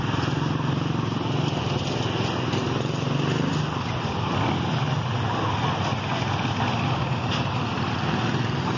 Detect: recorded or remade recorded